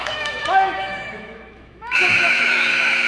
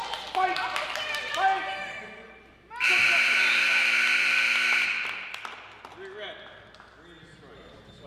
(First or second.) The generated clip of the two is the first